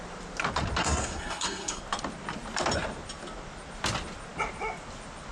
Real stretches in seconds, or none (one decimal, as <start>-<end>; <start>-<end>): 0.0-0.8; 1.8-5.3